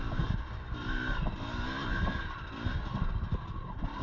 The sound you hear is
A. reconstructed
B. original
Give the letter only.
B